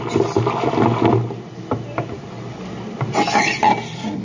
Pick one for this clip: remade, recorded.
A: recorded